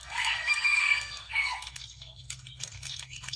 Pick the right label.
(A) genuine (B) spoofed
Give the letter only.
B